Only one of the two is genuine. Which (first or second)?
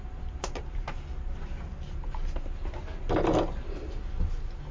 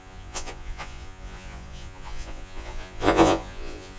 first